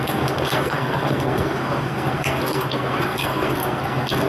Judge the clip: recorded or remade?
remade